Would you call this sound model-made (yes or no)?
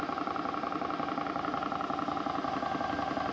no